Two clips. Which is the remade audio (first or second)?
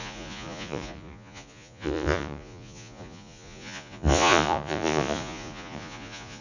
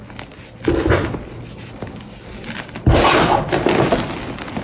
first